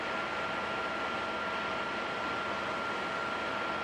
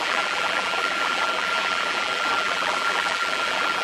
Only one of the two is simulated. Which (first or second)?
second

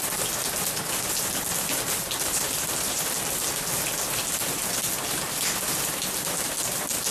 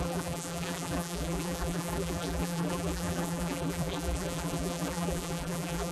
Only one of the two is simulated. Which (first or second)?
second